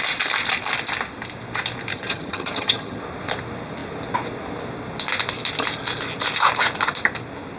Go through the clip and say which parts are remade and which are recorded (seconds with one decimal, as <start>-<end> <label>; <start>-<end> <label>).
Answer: 0.0-1.9 recorded; 1.9-3.0 remade; 3.0-7.6 recorded